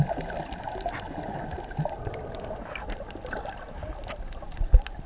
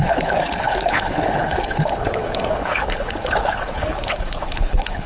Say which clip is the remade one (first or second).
second